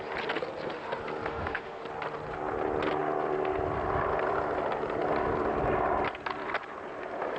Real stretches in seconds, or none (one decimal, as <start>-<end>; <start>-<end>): 0.0-1.3; 1.8-7.4